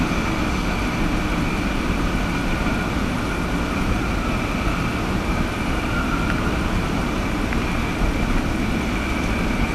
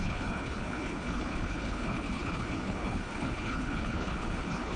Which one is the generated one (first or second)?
second